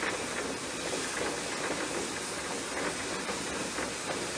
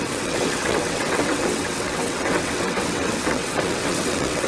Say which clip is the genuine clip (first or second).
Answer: first